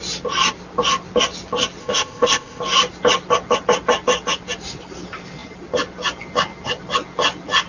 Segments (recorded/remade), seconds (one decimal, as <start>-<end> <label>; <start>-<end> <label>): 0.0-1.8 recorded; 1.8-2.6 remade; 2.6-7.7 recorded